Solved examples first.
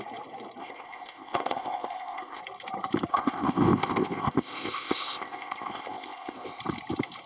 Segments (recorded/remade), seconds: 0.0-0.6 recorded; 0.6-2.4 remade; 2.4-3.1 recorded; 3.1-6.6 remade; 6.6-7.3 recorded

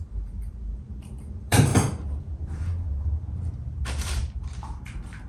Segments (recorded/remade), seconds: 0.0-1.7 remade; 1.7-2.2 recorded; 2.2-2.7 remade; 2.7-3.8 recorded; 3.8-5.3 remade

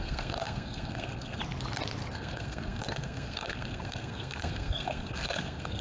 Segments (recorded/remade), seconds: 0.0-1.4 remade; 1.4-2.1 recorded; 2.1-5.8 remade

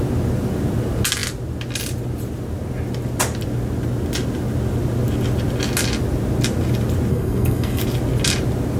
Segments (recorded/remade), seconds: 0.0-7.1 recorded; 7.1-7.8 remade; 7.8-8.8 recorded